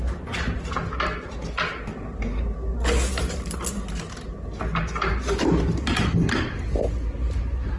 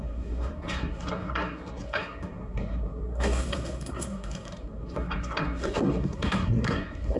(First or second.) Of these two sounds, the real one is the first